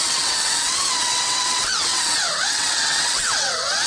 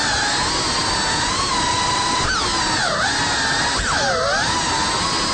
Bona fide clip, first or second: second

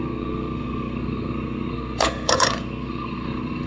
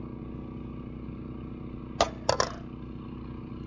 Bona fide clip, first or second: second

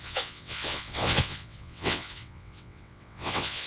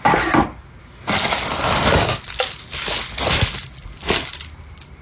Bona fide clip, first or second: second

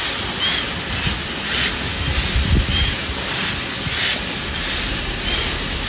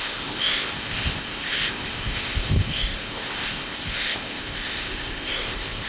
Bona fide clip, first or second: first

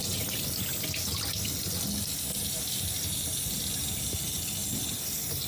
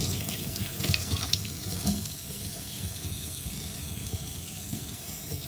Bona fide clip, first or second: first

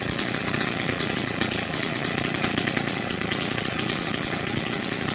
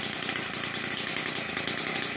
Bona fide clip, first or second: second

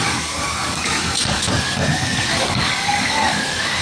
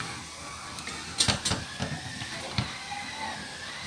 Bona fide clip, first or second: second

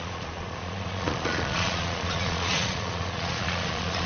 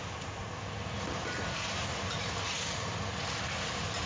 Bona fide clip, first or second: second